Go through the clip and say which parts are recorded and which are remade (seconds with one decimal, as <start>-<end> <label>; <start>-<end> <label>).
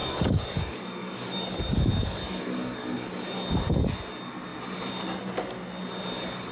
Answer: 0.0-3.9 remade; 3.9-6.5 recorded